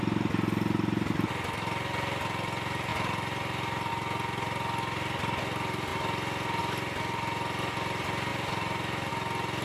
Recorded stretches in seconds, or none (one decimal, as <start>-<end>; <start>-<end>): 0.0-2.9; 3.9-8.3; 9.1-9.6